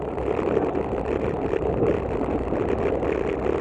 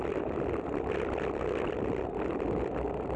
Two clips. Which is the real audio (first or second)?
second